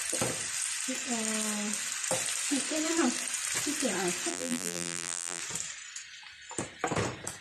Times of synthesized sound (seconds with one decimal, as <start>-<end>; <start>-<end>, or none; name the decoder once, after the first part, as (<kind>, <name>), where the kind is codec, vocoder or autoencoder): 4.3-5.4 (vocoder, BigVGAN v2)